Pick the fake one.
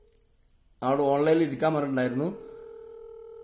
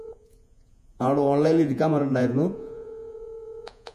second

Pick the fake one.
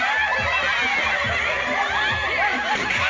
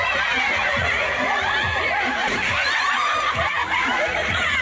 second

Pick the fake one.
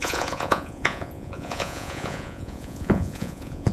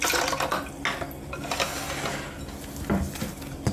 first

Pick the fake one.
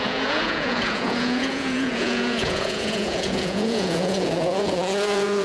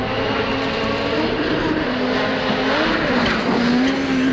first